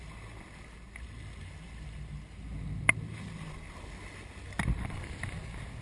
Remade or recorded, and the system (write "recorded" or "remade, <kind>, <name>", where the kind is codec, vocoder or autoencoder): recorded